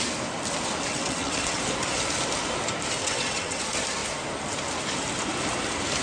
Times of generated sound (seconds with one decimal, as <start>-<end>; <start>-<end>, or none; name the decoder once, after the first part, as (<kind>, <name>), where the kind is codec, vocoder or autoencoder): 0.9-1.6 (vocoder, WaveNeXt); 3.0-3.6